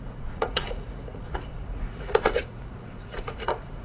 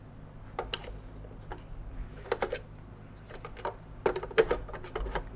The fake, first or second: first